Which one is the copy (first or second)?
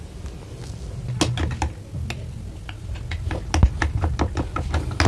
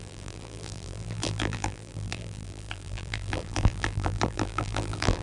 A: second